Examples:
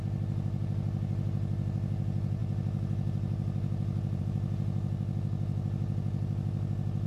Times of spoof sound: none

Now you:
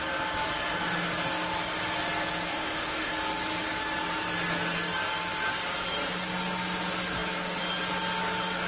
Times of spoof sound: 2.5-3.1